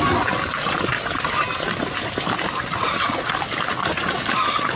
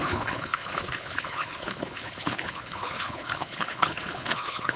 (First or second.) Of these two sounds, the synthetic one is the second